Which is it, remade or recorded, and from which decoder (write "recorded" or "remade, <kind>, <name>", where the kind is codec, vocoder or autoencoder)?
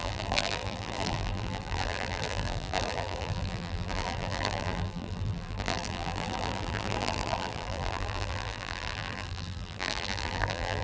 remade, vocoder, BigVGAN v2